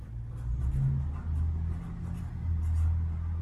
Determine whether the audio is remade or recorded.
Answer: recorded